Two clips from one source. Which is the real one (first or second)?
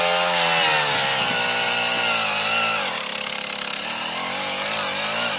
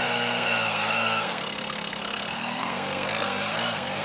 first